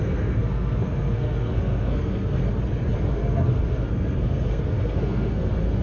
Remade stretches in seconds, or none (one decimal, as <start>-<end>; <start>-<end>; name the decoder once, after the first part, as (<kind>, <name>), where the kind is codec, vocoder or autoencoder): 0.0-2.4 (codec, SNAC); 3.1-5.8